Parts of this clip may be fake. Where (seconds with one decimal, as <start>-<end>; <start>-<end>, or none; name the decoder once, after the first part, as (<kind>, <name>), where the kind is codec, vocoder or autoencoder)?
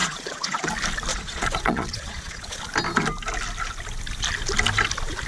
0.0-0.7 (vocoder, Vocos); 1.1-2.6